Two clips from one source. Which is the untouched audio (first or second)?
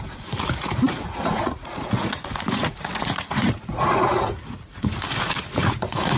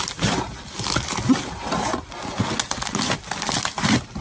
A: second